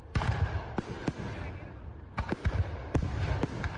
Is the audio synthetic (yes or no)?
no